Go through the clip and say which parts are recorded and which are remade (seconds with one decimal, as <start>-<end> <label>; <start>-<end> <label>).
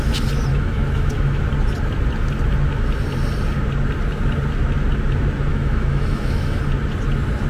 0.0-0.5 recorded; 0.5-1.4 remade; 1.4-5.5 recorded; 5.5-6.6 remade; 6.6-7.5 recorded